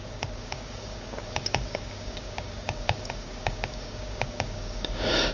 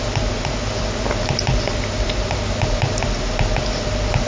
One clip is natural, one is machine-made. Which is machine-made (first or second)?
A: first